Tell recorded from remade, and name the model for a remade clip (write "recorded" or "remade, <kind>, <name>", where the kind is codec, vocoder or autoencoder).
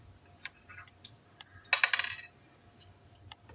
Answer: recorded